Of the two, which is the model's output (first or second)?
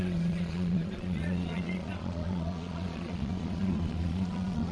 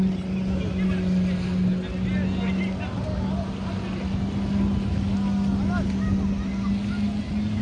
first